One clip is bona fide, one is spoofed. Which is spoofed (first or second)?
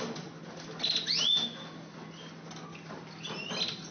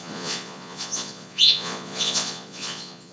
second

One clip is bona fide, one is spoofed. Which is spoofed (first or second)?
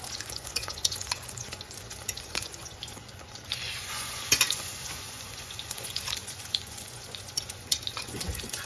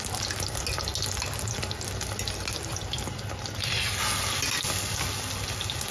first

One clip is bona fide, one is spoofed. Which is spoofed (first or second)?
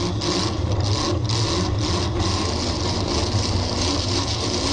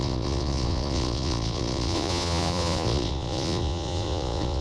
second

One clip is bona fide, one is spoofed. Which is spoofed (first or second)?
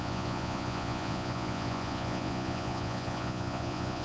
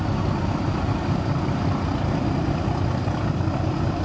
first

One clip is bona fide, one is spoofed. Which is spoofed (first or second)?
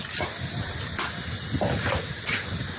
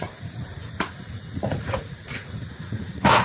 second